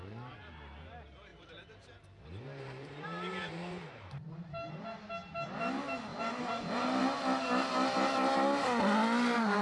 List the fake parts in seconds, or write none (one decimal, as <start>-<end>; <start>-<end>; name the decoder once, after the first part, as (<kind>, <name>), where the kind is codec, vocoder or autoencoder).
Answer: 1.3-4.8 (vocoder, BigVGAN v2); 6.1-7.0